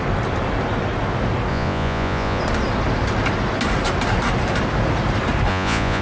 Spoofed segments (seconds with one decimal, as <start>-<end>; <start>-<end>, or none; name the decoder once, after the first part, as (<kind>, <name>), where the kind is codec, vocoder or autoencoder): 1.5-2.4 (vocoder, Vocos); 5.5-6.0